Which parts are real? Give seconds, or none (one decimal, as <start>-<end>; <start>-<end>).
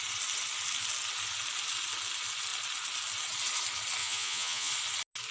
0.0-4.0; 4.7-5.3